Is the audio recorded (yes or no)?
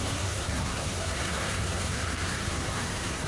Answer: no